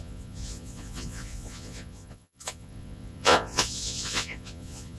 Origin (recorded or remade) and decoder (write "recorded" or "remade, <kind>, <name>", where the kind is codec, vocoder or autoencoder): remade, vocoder, Vocos